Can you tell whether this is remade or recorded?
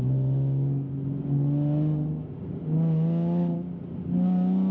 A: recorded